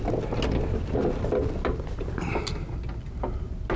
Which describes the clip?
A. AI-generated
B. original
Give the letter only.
B